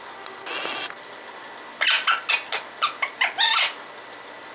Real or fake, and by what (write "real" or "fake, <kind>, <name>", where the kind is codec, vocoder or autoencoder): real